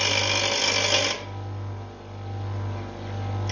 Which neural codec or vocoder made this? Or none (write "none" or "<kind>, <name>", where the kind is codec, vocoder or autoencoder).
none